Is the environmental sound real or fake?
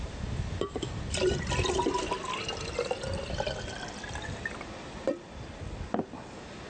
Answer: real